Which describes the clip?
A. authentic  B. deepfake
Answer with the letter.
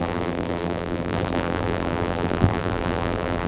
B